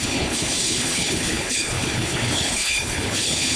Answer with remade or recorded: remade